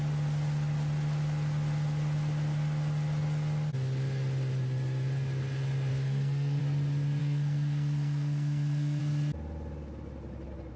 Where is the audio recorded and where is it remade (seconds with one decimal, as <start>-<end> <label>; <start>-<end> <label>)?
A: 0.0-5.9 recorded; 5.9-6.6 remade; 6.6-7.2 recorded; 7.2-9.0 remade; 9.0-10.8 recorded